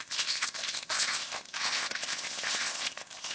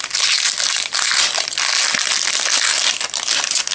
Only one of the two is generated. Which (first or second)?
first